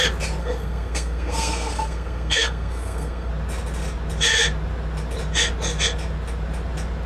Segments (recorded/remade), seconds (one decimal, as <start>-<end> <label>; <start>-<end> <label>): 0.0-0.4 recorded; 0.4-3.3 remade; 3.3-7.1 recorded

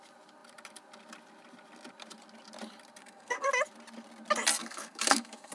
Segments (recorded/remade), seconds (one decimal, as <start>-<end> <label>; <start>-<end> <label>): 0.0-3.0 recorded; 3.0-3.5 remade; 3.5-4.6 recorded; 4.6-5.5 remade

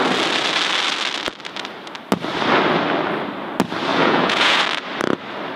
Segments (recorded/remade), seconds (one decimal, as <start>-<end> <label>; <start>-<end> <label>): 0.0-3.9 recorded; 3.9-4.6 remade; 4.6-5.6 recorded

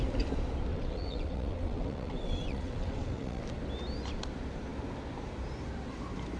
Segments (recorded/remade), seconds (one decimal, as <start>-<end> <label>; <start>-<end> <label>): 0.0-0.7 recorded; 0.7-3.4 remade; 3.4-6.4 recorded

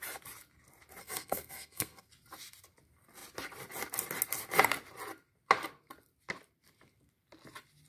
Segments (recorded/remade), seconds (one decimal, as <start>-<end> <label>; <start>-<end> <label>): 0.0-1.0 recorded; 1.0-2.1 remade; 2.1-7.9 recorded

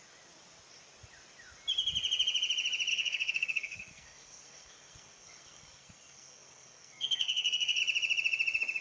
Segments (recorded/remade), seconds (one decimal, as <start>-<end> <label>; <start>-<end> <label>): 0.0-2.9 recorded; 2.9-7.8 remade; 7.8-8.8 recorded

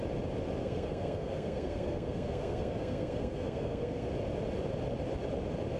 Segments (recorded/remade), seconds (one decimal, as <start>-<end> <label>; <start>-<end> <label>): 0.0-0.6 recorded; 0.6-4.1 remade; 4.1-5.8 recorded

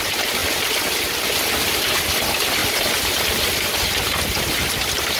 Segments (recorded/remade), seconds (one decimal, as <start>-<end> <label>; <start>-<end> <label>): 0.0-5.2 recorded